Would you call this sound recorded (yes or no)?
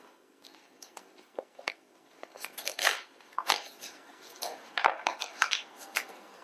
no